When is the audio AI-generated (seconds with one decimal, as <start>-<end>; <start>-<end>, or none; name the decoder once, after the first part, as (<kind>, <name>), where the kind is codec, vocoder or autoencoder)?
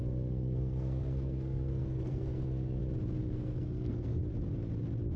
0.0-2.8 (codec, SNAC); 3.3-4.2